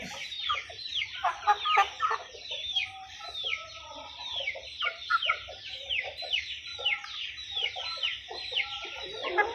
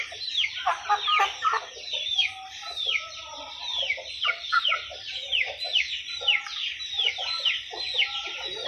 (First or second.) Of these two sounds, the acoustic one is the second